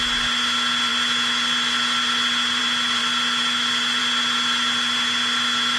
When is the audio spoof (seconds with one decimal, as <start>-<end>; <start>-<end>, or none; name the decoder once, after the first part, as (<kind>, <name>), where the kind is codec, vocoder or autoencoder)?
none